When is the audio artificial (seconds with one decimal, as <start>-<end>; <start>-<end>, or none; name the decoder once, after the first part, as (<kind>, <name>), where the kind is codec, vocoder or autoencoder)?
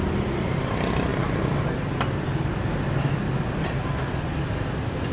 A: none